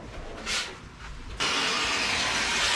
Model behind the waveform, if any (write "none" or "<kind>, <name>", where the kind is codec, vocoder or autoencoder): none